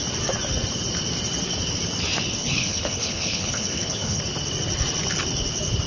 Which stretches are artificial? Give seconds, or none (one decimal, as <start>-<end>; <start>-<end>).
2.4-4.2